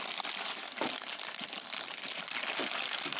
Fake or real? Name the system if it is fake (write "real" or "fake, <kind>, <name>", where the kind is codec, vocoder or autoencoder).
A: real